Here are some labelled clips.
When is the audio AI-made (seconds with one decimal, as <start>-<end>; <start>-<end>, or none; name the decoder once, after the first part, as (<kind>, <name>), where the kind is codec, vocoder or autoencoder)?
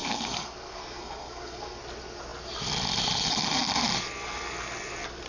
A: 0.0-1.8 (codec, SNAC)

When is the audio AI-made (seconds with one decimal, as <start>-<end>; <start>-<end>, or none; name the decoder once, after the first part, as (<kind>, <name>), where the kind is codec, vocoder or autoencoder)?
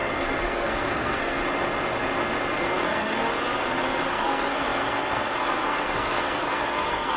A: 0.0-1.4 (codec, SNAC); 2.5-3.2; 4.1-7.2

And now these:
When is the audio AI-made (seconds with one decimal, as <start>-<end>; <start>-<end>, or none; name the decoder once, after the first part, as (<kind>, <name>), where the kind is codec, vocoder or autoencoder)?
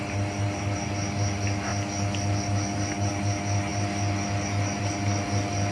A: none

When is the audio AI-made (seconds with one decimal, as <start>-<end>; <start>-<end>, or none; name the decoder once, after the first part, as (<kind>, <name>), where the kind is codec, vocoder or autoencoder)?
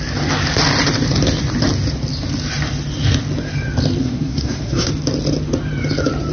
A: 4.0-4.9 (codec, SNAC)